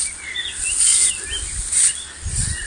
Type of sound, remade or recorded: recorded